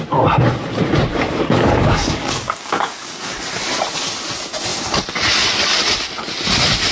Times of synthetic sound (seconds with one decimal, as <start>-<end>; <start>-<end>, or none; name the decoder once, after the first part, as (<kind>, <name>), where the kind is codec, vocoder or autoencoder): 1.1-3.4 (codec, DAC)